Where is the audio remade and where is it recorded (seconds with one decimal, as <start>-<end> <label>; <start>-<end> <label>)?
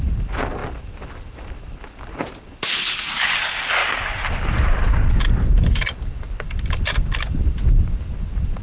0.0-8.6 recorded